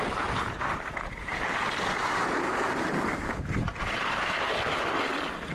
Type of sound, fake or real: real